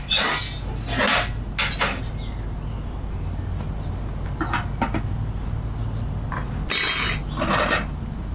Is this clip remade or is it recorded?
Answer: recorded